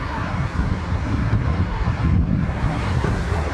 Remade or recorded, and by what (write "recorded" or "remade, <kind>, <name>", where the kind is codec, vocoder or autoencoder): remade, codec, SNAC